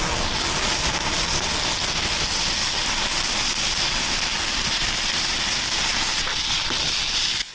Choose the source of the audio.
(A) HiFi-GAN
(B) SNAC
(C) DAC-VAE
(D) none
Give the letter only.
D